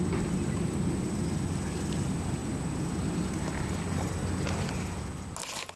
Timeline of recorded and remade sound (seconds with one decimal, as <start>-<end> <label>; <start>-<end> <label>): 0.0-5.8 recorded